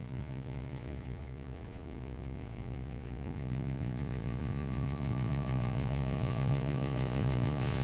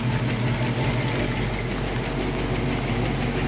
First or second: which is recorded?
second